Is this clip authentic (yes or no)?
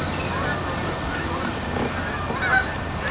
yes